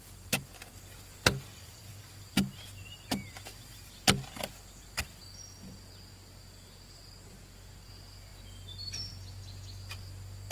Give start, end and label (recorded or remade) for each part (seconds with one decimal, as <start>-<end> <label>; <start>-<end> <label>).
0.0-10.5 recorded